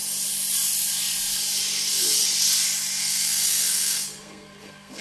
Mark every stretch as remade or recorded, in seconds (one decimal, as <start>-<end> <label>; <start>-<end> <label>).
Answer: 0.0-3.0 recorded; 3.0-5.0 remade